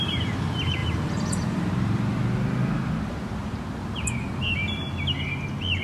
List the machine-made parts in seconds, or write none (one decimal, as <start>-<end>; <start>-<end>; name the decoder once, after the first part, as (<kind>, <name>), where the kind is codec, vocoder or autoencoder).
0.8-1.7 (vocoder, BigVGAN v2)